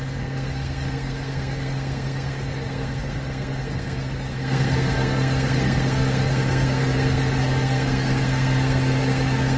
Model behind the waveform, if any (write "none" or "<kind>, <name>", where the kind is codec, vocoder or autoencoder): codec, SNAC